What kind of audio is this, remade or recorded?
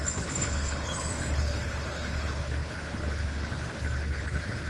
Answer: remade